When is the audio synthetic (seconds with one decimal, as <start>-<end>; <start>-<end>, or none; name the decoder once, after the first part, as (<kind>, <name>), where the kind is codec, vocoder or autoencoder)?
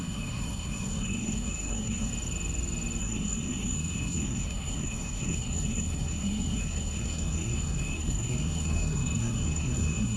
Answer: 0.0-2.1 (codec, SNAC); 3.0-10.2